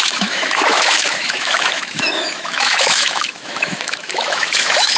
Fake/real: fake